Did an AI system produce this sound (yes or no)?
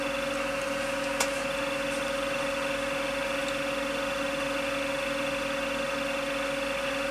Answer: no